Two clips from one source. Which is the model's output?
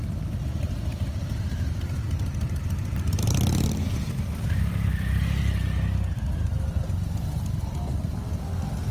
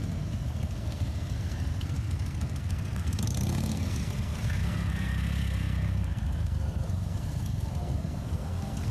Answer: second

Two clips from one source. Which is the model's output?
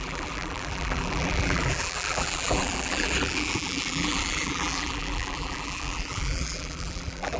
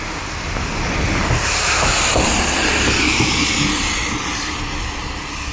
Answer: first